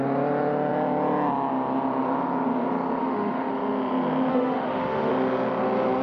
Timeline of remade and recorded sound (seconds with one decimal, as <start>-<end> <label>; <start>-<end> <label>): 0.0-3.0 recorded; 3.0-3.5 remade; 3.5-4.3 recorded; 4.3-5.1 remade; 5.1-6.0 recorded